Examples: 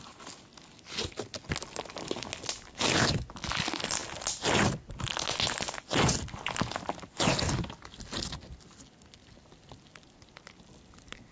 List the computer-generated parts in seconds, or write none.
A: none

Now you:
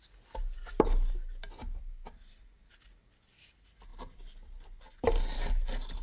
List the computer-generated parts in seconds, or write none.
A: none

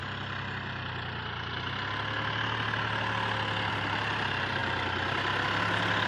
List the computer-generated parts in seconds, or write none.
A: 3.7-4.6 (vocoder, BigVGAN v2)